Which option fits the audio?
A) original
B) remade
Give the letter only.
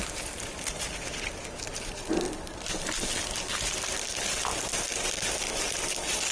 A